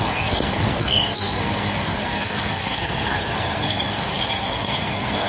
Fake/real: fake